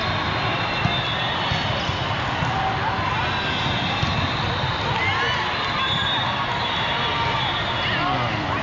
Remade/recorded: recorded